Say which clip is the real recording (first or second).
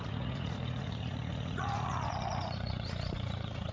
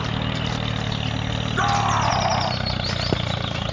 second